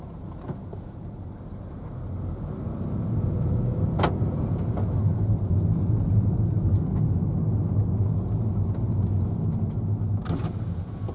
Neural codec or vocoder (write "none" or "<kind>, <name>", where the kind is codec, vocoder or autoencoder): none